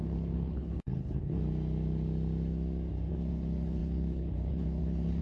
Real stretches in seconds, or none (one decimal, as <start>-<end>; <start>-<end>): 1.4-3.3